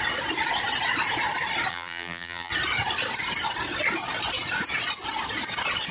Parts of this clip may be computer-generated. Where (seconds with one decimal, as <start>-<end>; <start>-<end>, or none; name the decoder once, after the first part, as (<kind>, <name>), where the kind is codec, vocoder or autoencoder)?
1.7-2.5 (vocoder, BigVGAN v2)